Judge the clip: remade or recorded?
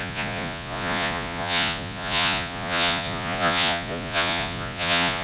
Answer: remade